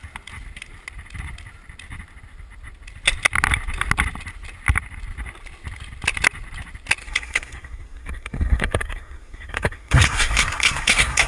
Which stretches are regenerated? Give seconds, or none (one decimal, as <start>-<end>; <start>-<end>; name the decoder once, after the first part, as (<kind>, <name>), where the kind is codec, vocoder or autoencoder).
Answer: 7.0-11.3 (codec, SNAC)